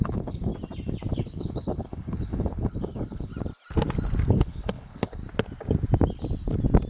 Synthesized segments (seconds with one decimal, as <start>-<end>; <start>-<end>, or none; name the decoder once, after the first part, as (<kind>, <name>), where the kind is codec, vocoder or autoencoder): 0.0-0.5 (codec, HILCodec); 1.1-3.3; 4.3-5.2